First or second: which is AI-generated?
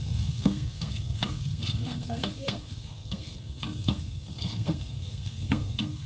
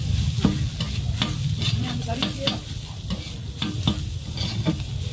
first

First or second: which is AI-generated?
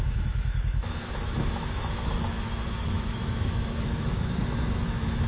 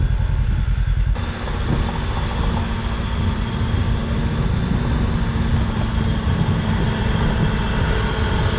first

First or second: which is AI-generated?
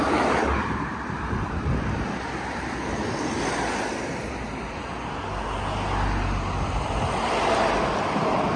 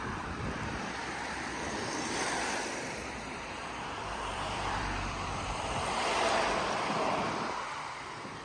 second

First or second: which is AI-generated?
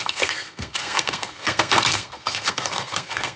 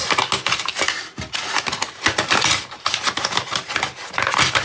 first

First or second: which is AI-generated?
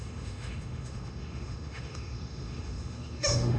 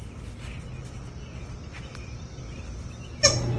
first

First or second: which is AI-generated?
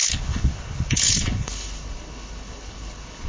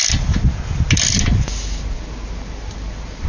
first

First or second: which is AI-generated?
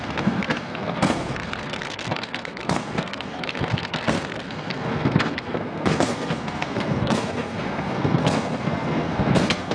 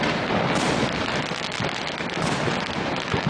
first